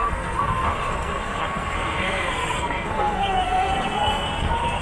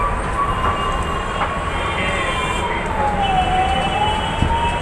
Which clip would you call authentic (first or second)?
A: second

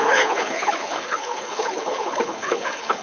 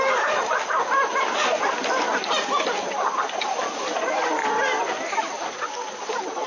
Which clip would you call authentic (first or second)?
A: second